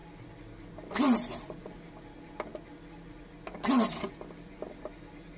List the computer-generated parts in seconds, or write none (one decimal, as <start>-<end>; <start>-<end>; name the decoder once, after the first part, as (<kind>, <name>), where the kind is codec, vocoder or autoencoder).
none

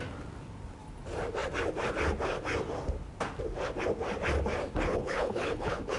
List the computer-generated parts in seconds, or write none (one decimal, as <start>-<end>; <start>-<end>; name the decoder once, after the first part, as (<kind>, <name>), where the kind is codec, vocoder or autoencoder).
4.9-6.0 (codec, HILCodec)

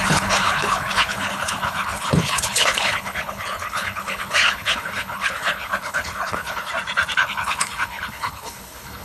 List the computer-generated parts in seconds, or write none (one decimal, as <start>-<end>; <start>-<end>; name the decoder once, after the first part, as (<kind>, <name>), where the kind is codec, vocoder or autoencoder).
0.0-6.7 (codec, HILCodec); 7.2-9.0

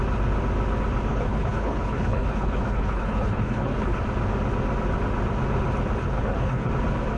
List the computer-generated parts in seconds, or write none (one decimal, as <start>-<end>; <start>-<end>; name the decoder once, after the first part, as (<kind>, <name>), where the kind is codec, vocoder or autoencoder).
1.1-4.0 (codec, HILCodec); 6.0-6.7